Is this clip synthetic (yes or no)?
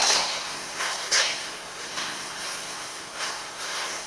yes